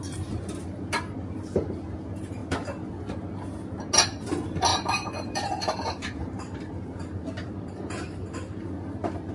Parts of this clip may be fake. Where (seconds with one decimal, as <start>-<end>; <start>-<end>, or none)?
4.7-8.7